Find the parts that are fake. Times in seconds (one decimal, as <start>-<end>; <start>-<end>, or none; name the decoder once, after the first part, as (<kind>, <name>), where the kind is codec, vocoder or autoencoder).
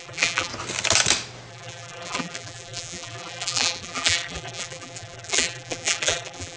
0.0-0.5 (vocoder, BigVGAN v2); 1.5-6.6